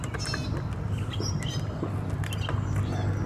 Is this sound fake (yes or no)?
no